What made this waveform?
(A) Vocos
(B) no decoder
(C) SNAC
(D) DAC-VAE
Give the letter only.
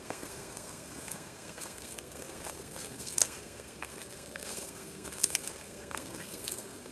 C